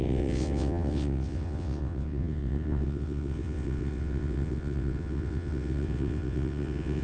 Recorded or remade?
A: remade